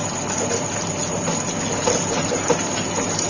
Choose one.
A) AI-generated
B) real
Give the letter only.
B